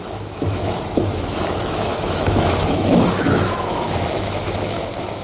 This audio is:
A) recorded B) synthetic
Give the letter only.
B